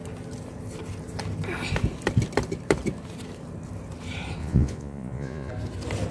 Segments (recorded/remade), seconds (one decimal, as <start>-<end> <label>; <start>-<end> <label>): 0.0-4.4 recorded; 4.4-5.5 remade; 5.5-6.1 recorded